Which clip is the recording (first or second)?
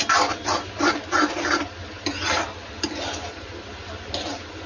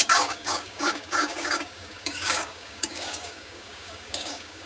first